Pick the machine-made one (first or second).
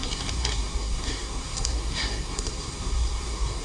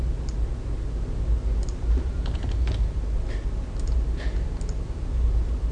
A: first